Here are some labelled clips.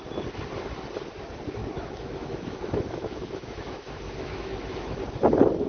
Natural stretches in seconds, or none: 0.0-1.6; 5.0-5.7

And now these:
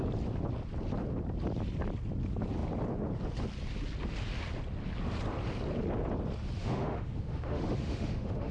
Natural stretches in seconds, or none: 0.0-6.6

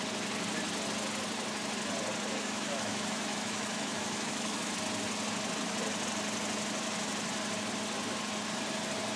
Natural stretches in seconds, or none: 0.0-2.3; 4.7-9.2